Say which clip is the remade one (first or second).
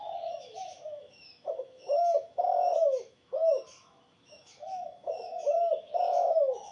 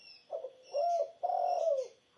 first